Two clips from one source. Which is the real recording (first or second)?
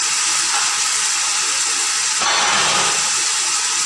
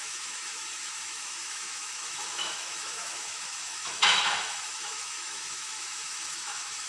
first